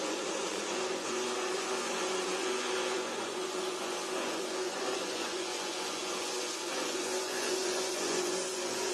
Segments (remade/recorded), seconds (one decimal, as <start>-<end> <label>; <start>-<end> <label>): 0.0-8.9 remade